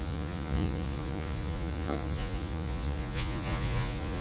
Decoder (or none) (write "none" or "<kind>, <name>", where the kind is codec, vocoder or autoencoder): vocoder, Vocos